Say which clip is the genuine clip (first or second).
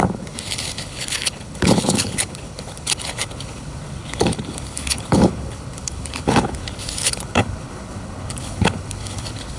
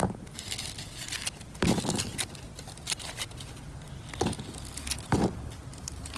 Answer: second